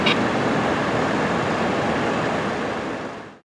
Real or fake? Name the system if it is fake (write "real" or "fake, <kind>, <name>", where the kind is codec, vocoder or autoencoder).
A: real